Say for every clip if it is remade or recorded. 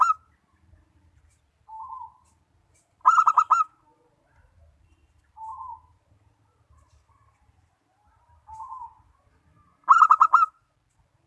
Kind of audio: recorded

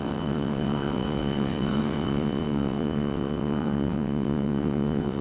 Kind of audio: remade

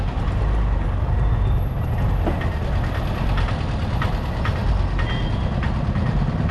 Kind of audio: recorded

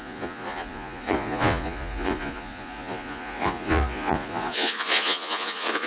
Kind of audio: remade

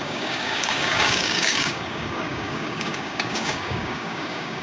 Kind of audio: remade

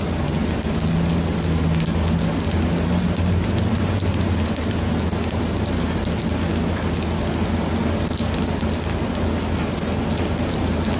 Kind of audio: recorded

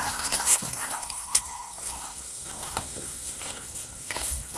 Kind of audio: remade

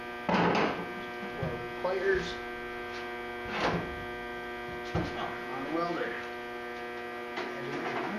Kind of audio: recorded